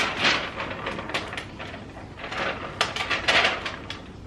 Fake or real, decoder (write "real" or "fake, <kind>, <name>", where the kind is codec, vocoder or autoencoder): real